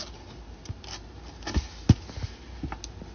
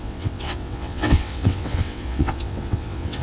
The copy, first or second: second